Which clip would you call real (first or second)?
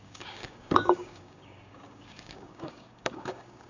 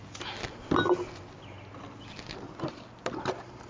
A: second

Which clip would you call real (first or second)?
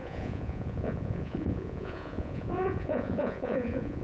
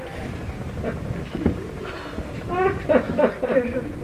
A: second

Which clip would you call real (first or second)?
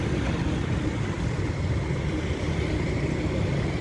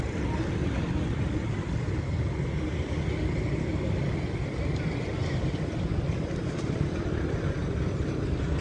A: second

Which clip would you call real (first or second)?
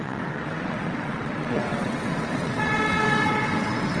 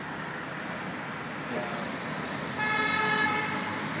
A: second